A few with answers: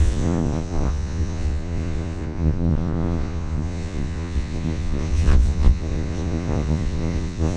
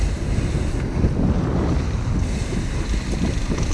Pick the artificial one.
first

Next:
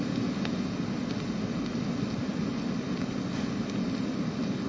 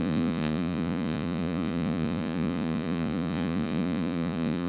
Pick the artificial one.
second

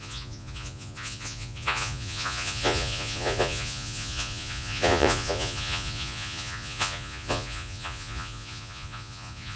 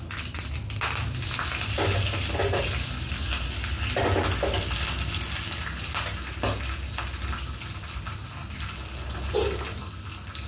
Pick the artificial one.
first